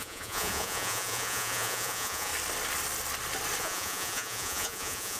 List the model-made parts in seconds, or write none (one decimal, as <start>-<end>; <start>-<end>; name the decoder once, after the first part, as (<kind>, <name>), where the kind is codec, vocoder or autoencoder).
0.0-2.3 (vocoder, Vocos); 3.6-5.2

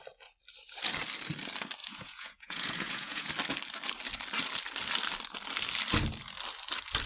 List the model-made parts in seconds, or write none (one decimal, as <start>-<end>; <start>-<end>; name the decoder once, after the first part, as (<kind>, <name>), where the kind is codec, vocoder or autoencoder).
1.8-3.3 (vocoder, Vocos)

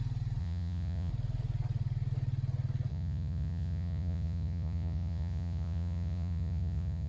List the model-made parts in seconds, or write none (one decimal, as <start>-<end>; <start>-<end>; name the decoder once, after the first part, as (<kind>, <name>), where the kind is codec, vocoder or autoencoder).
0.4-1.1 (vocoder, Vocos); 2.9-7.1

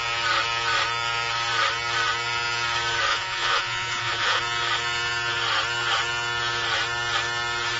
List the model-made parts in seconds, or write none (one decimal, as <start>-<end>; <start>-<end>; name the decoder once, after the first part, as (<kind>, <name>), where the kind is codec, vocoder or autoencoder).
3.1-4.4 (vocoder, Vocos)